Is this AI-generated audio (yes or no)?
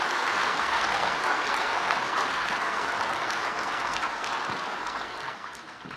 yes